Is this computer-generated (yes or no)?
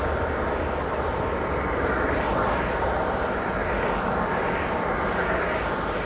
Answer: no